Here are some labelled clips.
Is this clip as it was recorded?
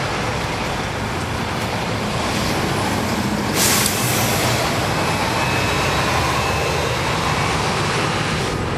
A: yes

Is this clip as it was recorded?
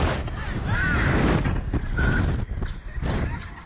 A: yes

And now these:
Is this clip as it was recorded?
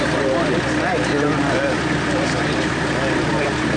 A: no